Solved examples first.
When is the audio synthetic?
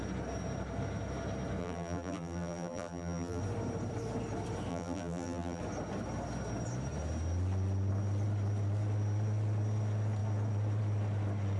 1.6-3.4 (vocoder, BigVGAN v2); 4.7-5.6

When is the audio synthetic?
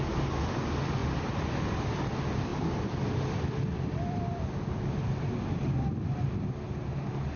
1.0-2.1 (vocoder, BigVGAN v2); 2.5-5.7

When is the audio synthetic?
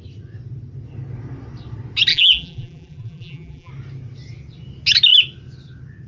2.1-3.7 (vocoder, BigVGAN v2)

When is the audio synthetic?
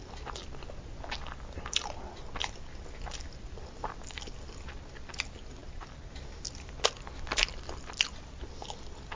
5.6-6.1 (vocoder, BigVGAN v2)